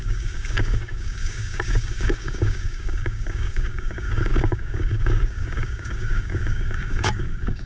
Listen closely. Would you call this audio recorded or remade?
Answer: remade